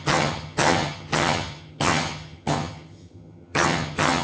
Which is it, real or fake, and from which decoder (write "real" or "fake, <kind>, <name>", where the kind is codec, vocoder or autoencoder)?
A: fake, vocoder, HiFi-GAN